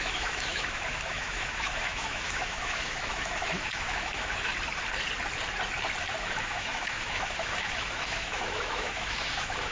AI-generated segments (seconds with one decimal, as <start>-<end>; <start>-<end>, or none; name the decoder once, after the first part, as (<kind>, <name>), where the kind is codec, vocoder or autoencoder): 0.0-4.5 (autoencoder, DAC-VAE); 6.2-9.7